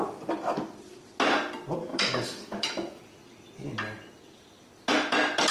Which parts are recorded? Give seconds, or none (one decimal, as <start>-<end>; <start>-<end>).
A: 0.0-1.9; 3.0-5.5